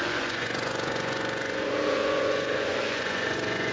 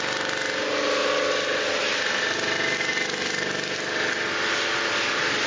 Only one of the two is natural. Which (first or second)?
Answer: second